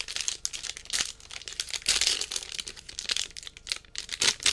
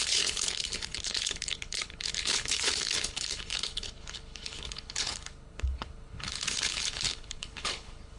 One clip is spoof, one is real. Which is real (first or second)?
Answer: first